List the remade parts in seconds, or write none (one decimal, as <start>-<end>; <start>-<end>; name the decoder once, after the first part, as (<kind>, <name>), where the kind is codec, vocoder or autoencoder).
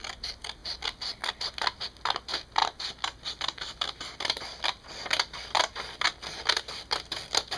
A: none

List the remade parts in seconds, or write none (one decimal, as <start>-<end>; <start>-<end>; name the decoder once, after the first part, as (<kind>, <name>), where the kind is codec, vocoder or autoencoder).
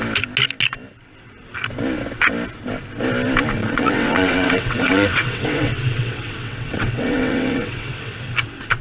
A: 3.6-8.2 (vocoder, WaveNeXt)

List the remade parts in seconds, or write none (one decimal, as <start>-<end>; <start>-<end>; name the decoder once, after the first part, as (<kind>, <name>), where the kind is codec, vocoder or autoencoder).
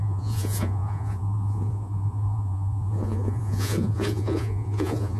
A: 0.0-5.2 (vocoder, Vocos)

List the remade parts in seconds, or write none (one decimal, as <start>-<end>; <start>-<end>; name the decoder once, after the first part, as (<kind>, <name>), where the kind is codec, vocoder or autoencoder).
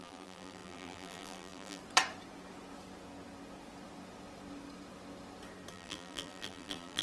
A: 0.0-1.8 (vocoder, BigVGAN v2); 5.7-7.0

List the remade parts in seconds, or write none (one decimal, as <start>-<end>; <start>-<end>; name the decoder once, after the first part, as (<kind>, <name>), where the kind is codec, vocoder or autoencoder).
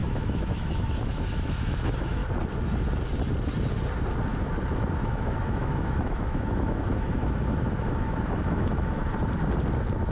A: 0.0-2.2 (autoencoder, DAC-VAE); 5.0-9.0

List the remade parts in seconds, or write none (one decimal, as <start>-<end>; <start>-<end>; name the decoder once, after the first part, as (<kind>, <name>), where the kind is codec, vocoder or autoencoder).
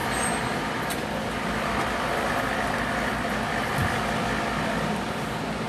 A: none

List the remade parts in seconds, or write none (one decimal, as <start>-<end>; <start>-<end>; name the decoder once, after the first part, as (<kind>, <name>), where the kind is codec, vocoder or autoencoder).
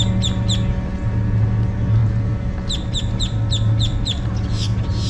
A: none